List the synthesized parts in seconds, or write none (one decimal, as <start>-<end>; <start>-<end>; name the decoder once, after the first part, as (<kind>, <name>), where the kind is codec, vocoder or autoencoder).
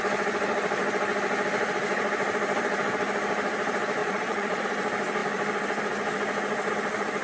4.0-4.6 (vocoder, Vocos)